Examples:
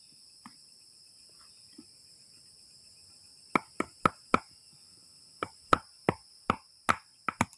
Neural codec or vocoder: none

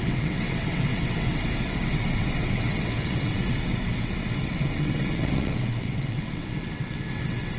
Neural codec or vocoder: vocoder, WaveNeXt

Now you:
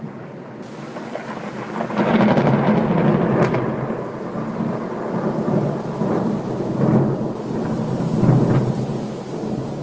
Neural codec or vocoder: none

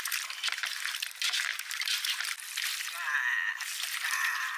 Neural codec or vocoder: vocoder, BigVGAN v2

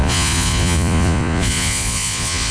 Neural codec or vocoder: vocoder, Vocos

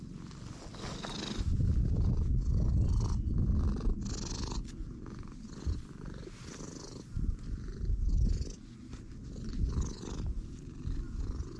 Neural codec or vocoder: none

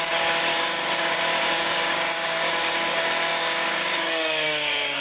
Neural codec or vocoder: codec, DAC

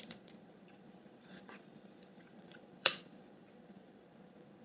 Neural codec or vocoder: vocoder, Vocos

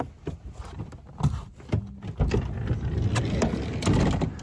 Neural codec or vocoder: none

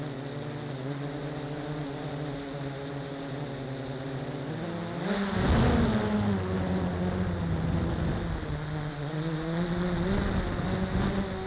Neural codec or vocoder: none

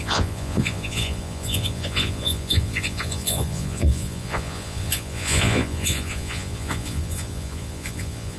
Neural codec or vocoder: vocoder, Vocos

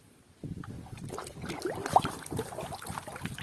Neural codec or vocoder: none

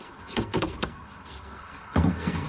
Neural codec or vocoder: codec, SNAC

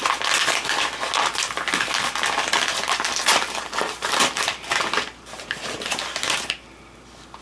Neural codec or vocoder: none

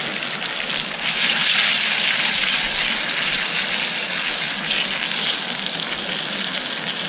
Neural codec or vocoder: none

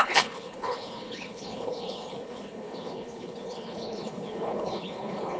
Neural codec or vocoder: codec, HILCodec